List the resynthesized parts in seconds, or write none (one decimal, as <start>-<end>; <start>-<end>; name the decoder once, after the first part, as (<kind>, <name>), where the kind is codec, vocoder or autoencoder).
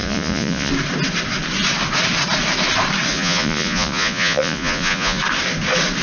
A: 0.0-0.7 (vocoder, Vocos); 3.1-5.2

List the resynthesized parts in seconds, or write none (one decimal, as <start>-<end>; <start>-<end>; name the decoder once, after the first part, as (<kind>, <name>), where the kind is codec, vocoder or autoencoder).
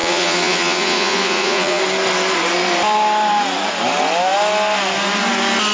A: 0.0-1.8 (vocoder, Vocos)